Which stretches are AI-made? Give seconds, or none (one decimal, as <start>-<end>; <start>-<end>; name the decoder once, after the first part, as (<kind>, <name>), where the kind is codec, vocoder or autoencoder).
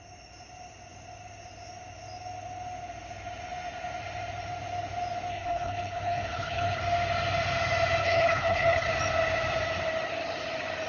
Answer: 5.3-6.8 (codec, HILCodec); 8.0-8.9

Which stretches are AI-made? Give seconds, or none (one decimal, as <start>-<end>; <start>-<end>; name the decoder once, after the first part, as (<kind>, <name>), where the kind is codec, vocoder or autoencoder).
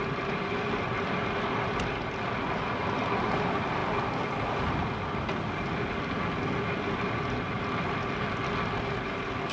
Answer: none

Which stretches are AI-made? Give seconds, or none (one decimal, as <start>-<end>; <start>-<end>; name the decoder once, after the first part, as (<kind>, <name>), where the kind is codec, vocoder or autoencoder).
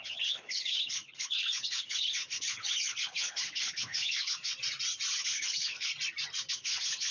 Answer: 0.0-4.5 (codec, HILCodec); 5.1-5.9; 6.5-7.1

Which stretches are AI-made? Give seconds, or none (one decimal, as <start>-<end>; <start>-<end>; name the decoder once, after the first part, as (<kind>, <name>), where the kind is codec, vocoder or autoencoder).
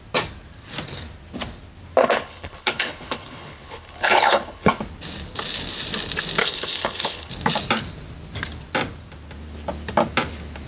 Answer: 2.0-4.8 (codec, HILCodec); 6.4-7.3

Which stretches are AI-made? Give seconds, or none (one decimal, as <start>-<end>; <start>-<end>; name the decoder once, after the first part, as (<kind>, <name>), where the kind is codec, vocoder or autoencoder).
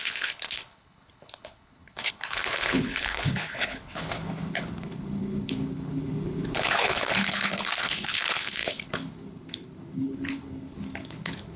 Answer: 0.0-11.6 (codec, HILCodec)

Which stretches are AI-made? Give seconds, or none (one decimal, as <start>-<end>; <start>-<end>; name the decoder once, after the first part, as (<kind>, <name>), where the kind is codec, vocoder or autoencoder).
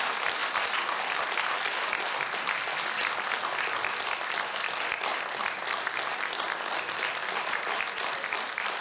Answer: none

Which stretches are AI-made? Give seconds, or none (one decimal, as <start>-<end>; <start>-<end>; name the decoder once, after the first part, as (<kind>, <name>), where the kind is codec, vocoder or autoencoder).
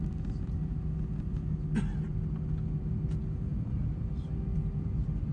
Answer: none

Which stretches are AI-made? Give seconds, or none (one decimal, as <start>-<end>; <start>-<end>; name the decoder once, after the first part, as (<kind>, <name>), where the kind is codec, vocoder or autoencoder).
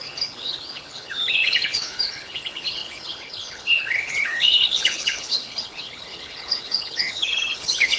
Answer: 0.0-8.0 (codec, HILCodec)